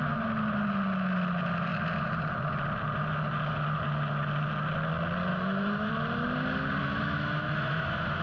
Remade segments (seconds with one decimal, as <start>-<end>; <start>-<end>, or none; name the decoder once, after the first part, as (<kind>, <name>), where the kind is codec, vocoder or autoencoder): 5.3-5.9 (autoencoder, DAC-VAE); 6.8-8.2

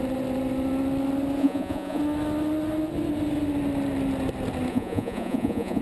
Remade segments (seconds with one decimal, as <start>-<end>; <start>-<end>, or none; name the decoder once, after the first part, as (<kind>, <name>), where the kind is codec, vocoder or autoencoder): 1.4-2.0 (vocoder, Vocos); 4.7-5.8

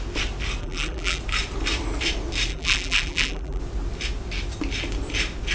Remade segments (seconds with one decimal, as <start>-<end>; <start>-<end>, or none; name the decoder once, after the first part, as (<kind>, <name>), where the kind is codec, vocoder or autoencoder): 0.6-1.2 (vocoder, BigVGAN v2); 2.5-3.6

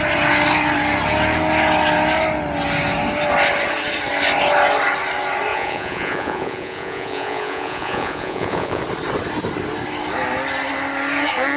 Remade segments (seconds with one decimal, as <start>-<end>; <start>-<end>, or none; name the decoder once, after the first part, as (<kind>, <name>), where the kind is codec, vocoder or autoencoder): 5.5-8.8 (vocoder, Vocos)